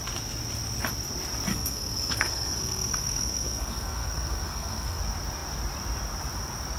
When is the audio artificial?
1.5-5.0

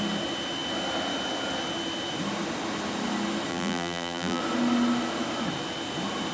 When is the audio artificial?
3.5-4.4

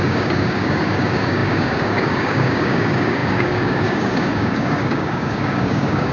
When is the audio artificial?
0.0-6.1

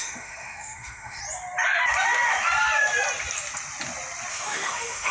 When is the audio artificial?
0.0-1.2; 4.3-5.1

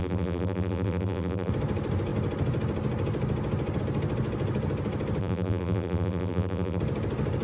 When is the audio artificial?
0.0-1.5; 5.2-6.8

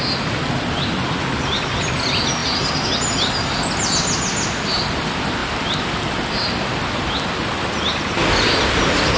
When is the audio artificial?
none